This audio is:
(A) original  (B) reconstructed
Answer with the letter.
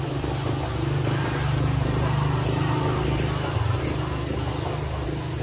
A